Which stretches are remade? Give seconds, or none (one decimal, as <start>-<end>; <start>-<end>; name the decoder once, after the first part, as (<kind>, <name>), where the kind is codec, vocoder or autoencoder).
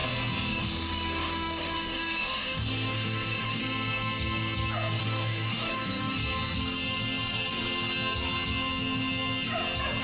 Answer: 0.5-3.6 (autoencoder, DAC-VAE); 5.0-6.2